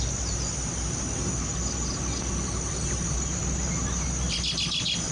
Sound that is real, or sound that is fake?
real